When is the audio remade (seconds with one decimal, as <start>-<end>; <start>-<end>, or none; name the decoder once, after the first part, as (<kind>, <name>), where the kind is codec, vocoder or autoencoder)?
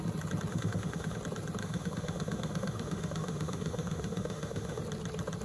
0.5-1.2 (autoencoder, DAC-VAE); 1.6-4.8